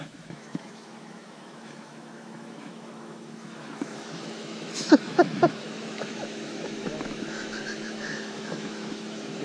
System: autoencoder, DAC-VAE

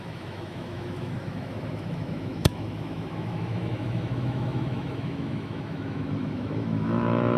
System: autoencoder, DAC-VAE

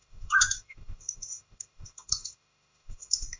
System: autoencoder, DAC-VAE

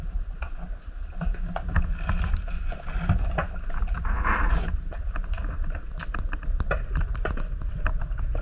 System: none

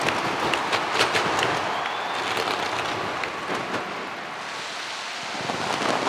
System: none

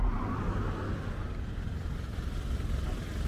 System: none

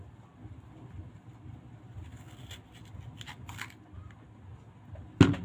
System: none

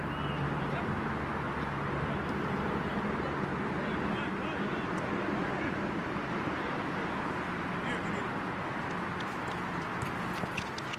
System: none